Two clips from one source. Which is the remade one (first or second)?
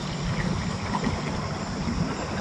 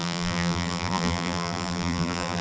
second